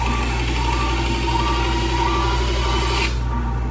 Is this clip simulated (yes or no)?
no